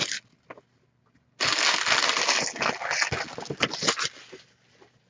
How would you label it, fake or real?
real